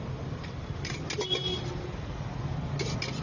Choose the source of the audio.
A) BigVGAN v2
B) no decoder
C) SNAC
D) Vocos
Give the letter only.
B